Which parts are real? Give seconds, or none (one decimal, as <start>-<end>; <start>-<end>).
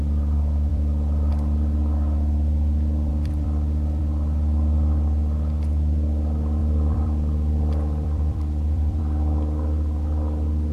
0.0-0.7; 1.3-3.1; 4.0-6.6; 9.0-10.7